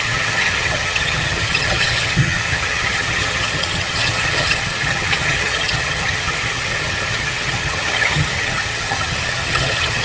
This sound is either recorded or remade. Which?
remade